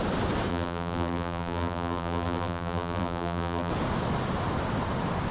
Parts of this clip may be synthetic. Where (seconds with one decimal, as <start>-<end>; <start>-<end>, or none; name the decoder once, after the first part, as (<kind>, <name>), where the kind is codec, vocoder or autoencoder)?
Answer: 0.5-3.7 (vocoder, BigVGAN v2)

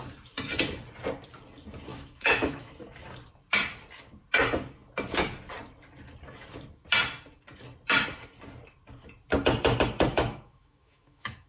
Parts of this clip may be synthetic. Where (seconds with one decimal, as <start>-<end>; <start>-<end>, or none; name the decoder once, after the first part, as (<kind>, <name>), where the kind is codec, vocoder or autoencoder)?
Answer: 1.9-2.7 (autoencoder, DAC-VAE); 10.1-11.5

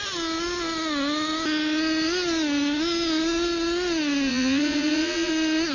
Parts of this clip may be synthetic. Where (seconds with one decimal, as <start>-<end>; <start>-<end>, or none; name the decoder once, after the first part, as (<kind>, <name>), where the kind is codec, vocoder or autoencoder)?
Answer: 4.3-5.3 (vocoder, Vocos)

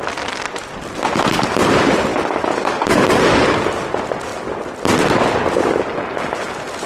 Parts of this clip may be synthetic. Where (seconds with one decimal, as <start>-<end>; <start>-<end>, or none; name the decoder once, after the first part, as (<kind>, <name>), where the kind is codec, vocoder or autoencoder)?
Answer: 2.1-3.6 (codec, DAC)

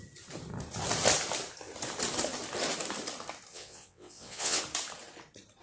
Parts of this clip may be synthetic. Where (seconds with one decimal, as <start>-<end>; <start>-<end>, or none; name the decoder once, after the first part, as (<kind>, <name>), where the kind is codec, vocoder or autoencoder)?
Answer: 3.5-4.6 (vocoder, WaveNeXt)

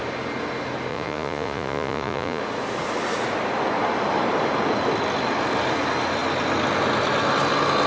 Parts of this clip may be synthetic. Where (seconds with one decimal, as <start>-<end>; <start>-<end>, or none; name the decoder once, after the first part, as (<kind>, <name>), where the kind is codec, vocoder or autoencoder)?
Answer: 0.9-2.4 (vocoder, Vocos)

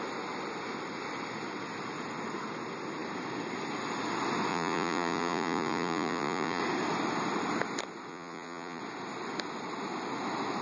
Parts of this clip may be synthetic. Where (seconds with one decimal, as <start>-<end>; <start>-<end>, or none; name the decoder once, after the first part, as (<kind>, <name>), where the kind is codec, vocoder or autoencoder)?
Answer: 4.5-6.6 (vocoder, Vocos); 8.1-8.8

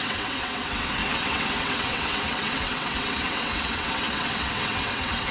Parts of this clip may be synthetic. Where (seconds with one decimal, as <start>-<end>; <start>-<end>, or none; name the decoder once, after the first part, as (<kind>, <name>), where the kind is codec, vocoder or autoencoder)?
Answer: 0.0-5.3 (vocoder, WaveNeXt)